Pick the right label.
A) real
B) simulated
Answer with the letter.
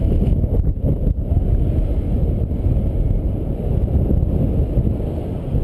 A